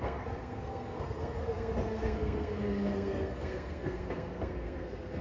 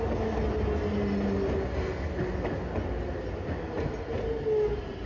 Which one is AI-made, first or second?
first